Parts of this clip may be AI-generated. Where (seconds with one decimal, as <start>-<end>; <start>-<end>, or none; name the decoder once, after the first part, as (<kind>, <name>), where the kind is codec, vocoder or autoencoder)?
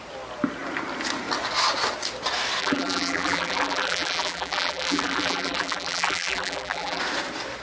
2.6-7.0 (vocoder, BigVGAN v2)